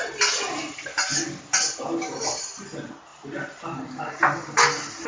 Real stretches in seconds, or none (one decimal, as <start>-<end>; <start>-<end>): 0.0-5.1

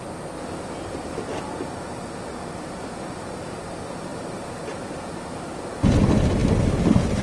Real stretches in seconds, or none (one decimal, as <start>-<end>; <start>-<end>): 0.0-2.3; 2.9-7.2

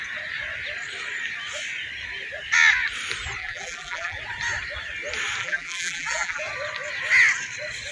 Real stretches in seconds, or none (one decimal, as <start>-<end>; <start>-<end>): 0.0-3.4; 4.2-5.4; 6.4-7.9

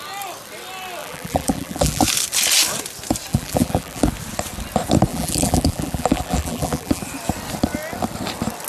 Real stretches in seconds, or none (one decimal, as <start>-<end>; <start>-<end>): 0.0-1.0; 2.0-3.3; 4.1-5.1; 7.0-8.7

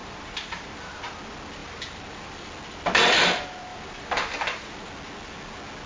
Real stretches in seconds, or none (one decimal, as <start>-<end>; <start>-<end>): 1.0-1.6; 2.3-3.7; 4.9-5.9

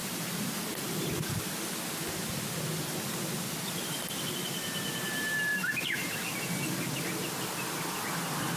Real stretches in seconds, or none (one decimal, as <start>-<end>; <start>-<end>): 1.3-5.5; 6.2-8.6

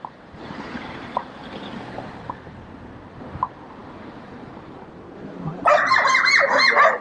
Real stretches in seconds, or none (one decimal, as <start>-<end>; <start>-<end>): 1.4-1.9

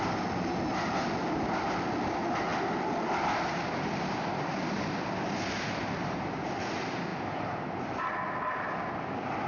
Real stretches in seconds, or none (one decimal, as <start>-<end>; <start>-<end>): 0.0-7.1; 8.1-9.5